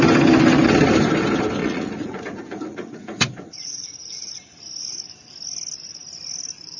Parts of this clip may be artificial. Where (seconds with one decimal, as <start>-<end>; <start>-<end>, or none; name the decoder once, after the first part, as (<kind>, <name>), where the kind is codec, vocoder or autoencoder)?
1.6-4.3 (vocoder, Vocos)